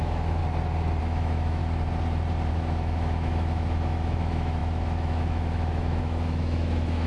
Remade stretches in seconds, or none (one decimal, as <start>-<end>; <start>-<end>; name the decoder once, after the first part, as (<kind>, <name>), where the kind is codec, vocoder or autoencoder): 0.0-0.4 (autoencoder, DAC-VAE); 1.0-1.6; 2.5-7.1